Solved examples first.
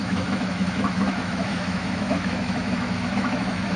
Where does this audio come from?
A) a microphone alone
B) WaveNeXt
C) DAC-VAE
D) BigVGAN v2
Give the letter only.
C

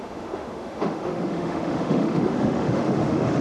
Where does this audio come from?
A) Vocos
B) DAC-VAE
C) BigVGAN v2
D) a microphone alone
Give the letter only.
B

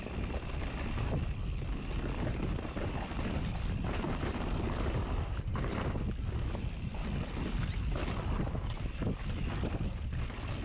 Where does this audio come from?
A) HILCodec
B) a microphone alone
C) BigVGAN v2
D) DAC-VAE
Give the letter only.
B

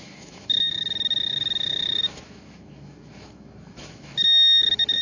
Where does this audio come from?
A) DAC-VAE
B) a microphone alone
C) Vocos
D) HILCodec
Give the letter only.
A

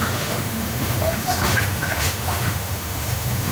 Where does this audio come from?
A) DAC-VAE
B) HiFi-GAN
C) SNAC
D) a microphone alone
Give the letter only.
A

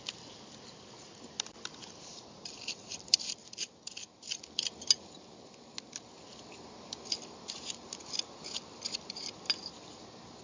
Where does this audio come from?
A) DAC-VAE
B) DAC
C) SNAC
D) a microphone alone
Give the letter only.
D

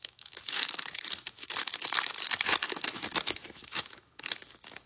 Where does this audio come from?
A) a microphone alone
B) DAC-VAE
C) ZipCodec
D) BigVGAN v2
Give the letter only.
B